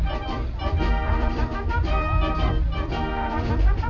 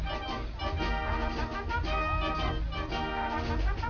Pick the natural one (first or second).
second